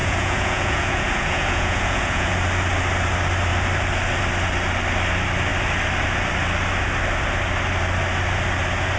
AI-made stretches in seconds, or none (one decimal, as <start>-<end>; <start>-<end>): 0.0-2.3